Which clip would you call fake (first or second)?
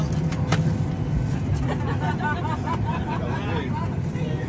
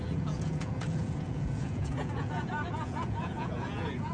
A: second